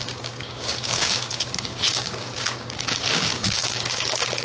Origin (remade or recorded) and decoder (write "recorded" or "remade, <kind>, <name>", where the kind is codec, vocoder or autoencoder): remade, codec, DAC